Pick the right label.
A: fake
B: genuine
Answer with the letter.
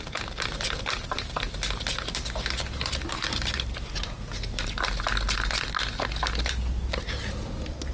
B